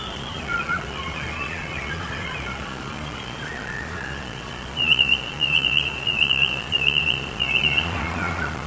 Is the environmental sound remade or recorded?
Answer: remade